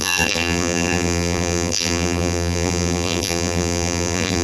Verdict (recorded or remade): remade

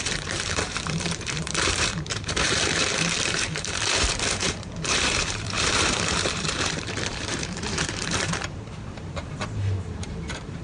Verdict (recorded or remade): remade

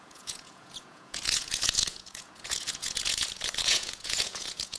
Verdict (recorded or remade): remade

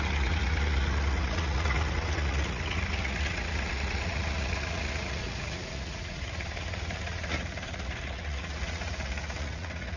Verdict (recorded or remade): remade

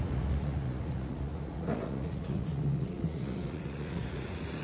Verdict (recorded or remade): remade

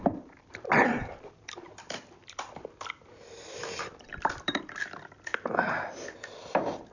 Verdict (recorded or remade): remade